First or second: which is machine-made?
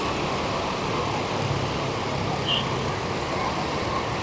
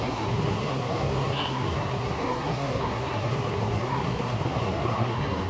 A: second